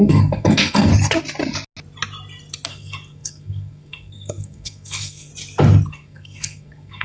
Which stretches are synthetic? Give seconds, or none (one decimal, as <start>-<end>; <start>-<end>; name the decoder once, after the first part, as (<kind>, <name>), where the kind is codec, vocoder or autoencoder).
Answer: 0.0-0.9 (codec, SNAC); 2.7-5.3; 5.9-7.0